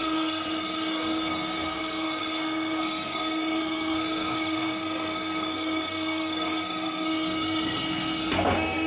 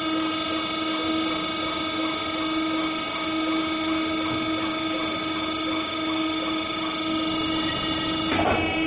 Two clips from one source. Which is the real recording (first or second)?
second